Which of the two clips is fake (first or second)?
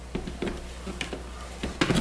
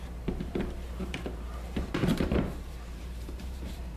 second